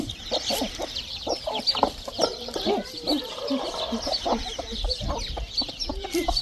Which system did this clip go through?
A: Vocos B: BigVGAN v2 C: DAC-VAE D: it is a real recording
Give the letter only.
B